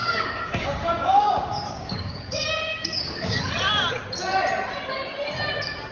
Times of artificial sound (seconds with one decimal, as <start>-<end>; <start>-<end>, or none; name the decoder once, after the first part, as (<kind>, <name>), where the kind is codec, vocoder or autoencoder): 0.0-3.5 (codec, DAC)